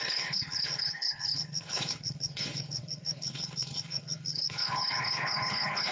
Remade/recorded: remade